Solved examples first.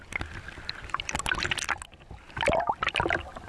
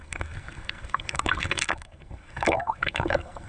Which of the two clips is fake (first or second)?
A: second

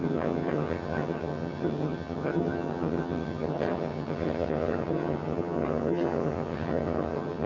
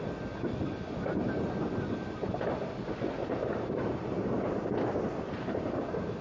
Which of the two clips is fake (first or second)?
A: first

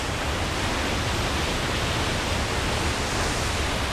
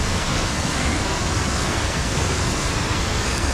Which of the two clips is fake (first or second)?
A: second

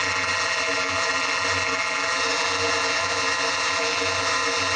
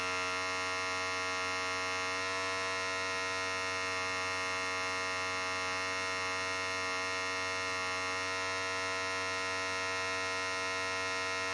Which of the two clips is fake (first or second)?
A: first